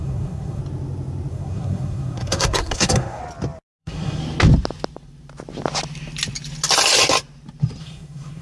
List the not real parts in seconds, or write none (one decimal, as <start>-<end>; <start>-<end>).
0.0-0.6; 1.3-3.2; 3.8-4.2; 7.8-8.4